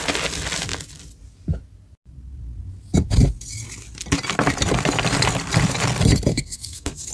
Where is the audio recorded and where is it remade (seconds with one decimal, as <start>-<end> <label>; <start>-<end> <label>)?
0.0-6.3 recorded; 6.3-7.1 remade